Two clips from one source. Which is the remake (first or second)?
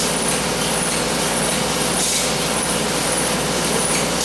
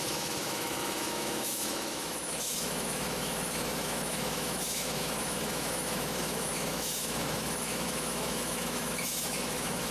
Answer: second